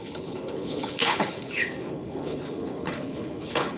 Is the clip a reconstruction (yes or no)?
yes